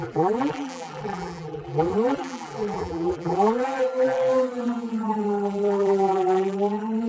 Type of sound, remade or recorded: remade